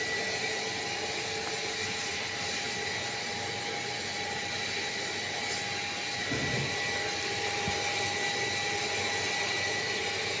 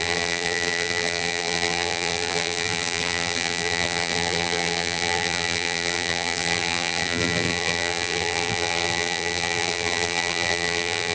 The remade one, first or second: second